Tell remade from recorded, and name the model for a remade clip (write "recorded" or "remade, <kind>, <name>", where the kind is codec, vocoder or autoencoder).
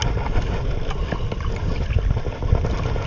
recorded